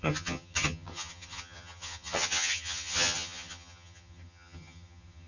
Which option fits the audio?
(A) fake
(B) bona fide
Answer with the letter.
A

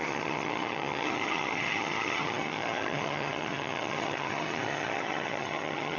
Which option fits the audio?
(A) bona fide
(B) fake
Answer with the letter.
B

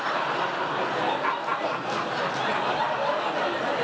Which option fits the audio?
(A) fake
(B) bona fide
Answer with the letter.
B